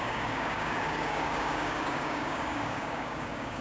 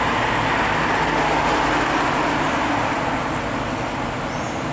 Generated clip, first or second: first